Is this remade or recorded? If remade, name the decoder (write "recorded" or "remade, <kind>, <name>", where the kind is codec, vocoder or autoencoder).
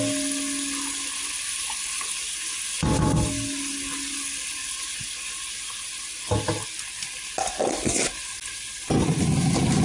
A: recorded